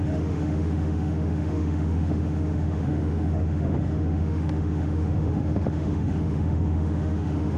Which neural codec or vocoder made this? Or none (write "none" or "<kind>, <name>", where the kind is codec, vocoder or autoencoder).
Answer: autoencoder, DAC-VAE